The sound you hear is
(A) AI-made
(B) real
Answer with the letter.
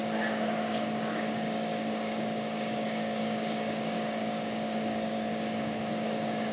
A